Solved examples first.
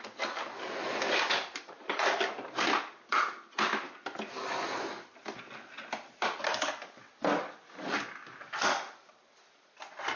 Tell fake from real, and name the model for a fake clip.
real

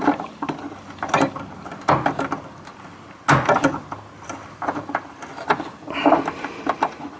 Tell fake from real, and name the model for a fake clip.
real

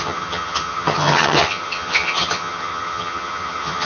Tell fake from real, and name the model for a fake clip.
fake, vocoder, HiFi-GAN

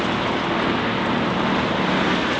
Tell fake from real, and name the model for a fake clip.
real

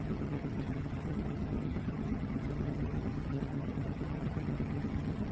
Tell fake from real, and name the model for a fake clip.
fake, vocoder, HiFi-GAN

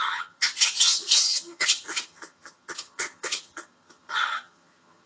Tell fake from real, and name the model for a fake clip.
fake, vocoder, HiFi-GAN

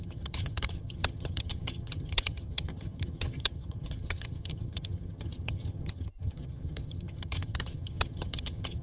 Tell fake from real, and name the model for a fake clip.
fake, vocoder, HiFi-GAN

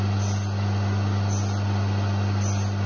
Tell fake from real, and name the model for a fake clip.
real